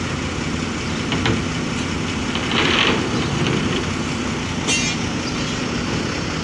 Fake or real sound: real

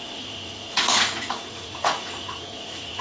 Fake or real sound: fake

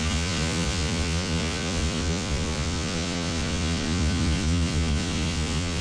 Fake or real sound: fake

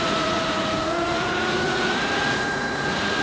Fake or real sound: fake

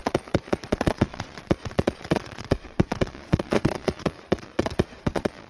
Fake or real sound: fake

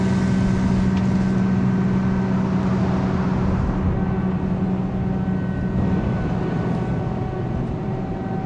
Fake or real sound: real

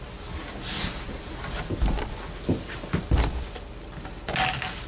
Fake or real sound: real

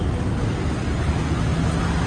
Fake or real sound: real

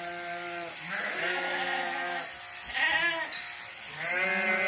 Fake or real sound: real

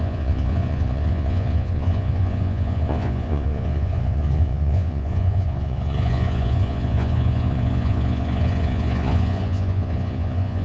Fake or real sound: fake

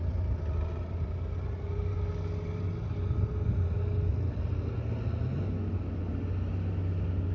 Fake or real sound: real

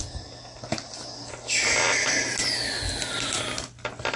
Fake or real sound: real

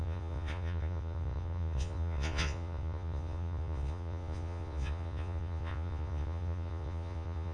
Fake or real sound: fake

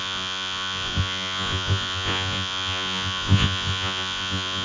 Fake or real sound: fake